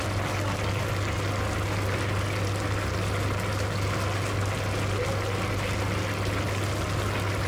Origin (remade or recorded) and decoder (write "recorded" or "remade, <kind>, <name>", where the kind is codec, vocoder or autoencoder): recorded